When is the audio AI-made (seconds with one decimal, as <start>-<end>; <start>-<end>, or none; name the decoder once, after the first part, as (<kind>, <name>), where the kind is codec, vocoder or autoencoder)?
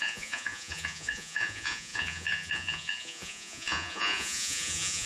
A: 0.0-5.1 (vocoder, Vocos)